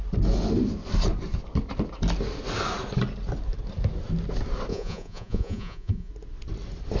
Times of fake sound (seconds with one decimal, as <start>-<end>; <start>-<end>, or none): 4.7-6.1